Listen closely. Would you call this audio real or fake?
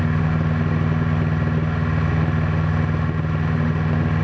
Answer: real